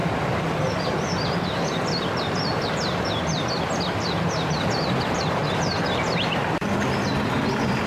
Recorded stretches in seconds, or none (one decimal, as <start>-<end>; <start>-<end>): 0.0-7.9